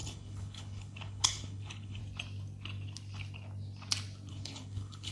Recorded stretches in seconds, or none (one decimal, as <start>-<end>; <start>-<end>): 2.0-4.3